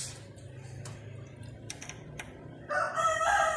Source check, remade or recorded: remade